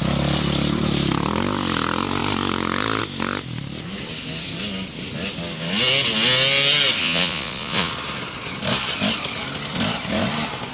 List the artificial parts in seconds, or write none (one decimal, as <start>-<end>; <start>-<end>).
7.0-7.9